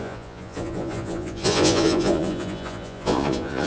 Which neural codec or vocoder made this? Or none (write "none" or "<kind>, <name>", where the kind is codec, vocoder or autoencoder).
vocoder, Vocos